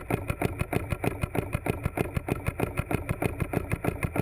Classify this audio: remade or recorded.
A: recorded